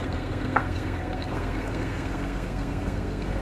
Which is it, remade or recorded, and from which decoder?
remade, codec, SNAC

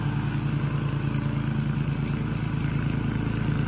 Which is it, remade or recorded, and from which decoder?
recorded